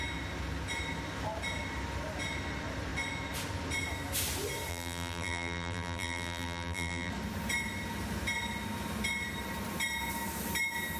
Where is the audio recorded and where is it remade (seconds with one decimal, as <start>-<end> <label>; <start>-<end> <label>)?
0.0-4.7 recorded; 4.7-7.1 remade; 7.1-11.0 recorded